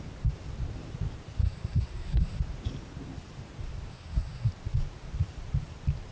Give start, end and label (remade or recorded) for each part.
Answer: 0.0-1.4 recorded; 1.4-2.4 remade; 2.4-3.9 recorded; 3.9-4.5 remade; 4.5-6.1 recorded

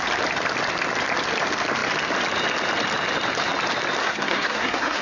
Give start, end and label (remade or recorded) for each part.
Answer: 0.0-4.0 recorded; 4.0-5.0 remade

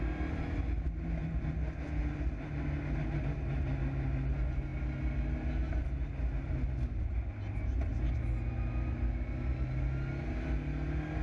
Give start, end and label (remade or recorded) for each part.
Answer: 0.0-11.2 recorded

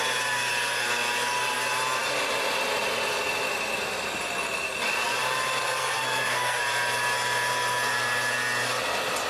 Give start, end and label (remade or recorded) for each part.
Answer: 0.0-5.6 recorded; 5.6-6.6 remade; 6.6-9.3 recorded

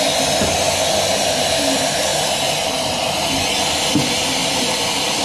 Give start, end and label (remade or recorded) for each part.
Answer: 0.0-5.2 recorded